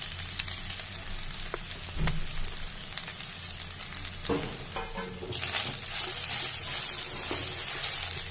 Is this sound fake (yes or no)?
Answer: no